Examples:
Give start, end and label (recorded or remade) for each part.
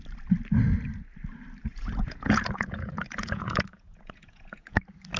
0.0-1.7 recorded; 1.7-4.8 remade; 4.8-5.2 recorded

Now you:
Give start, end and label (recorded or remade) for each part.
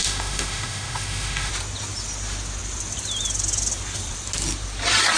0.0-1.5 remade; 1.5-5.2 recorded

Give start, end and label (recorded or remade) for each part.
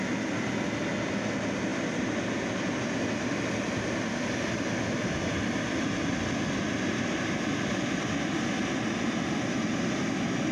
0.0-10.5 recorded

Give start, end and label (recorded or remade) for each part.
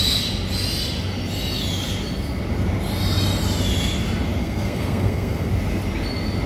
0.0-4.4 recorded; 4.4-5.5 remade; 5.5-6.5 recorded